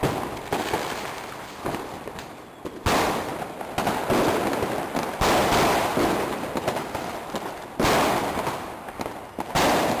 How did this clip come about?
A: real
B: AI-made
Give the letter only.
A